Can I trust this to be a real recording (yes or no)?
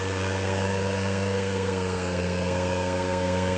no